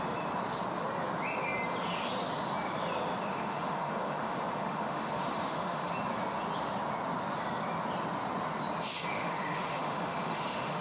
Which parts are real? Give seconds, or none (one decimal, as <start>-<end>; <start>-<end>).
0.0-3.3; 5.9-9.1